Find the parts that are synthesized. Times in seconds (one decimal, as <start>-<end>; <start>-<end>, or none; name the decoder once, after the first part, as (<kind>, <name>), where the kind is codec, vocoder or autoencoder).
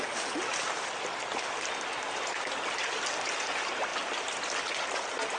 none